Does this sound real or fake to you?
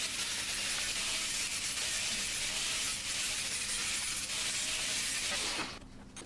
real